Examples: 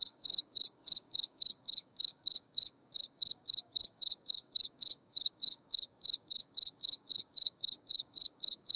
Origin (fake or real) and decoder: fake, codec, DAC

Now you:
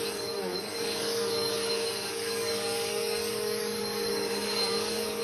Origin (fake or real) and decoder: fake, codec, DAC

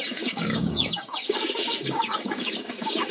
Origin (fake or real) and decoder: fake, codec, DAC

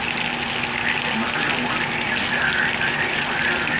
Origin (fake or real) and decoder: real